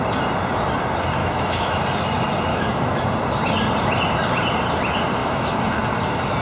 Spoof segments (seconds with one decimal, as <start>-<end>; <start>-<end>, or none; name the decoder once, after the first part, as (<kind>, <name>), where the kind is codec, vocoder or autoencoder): 1.2-1.8 (autoencoder, DAC-VAE); 2.5-3.0; 5.2-5.8